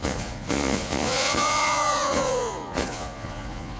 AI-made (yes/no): yes